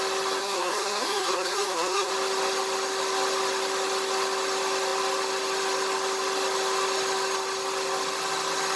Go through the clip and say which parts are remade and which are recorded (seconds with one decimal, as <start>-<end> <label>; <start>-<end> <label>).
0.0-0.4 recorded; 0.4-2.1 remade; 2.1-8.8 recorded